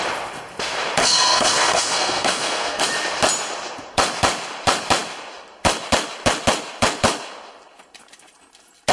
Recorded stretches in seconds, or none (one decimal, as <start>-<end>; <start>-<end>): 0.0-1.0; 2.8-8.9